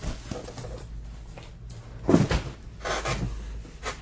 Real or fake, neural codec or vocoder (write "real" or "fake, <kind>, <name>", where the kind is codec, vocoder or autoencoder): real